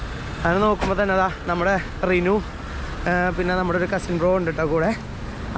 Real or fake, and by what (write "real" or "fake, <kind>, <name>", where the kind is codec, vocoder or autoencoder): real